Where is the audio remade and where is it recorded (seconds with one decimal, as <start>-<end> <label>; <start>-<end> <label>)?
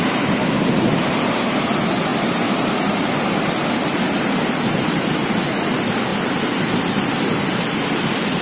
0.0-2.1 recorded; 2.1-2.7 remade; 2.7-6.1 recorded; 6.1-6.7 remade; 6.7-8.4 recorded